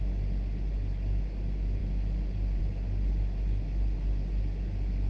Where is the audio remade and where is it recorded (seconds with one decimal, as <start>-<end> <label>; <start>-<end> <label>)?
0.0-5.1 recorded

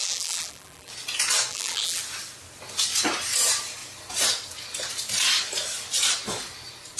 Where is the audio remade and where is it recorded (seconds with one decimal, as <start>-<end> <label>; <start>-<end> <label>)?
0.0-0.9 remade; 0.9-1.5 recorded; 1.5-2.0 remade; 2.0-7.0 recorded